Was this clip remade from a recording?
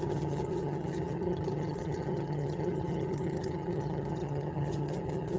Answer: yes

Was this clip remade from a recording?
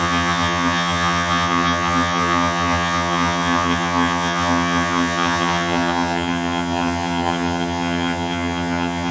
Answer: yes